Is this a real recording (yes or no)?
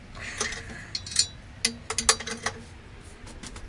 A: yes